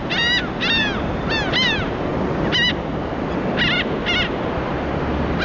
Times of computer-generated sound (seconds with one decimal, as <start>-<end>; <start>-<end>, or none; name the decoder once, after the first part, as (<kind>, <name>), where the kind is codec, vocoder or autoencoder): none